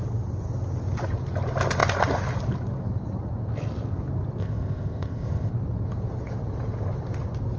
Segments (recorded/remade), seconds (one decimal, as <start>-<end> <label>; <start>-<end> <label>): 0.0-4.4 recorded; 4.4-5.5 remade; 5.5-7.6 recorded